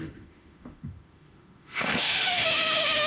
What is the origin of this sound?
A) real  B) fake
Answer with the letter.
B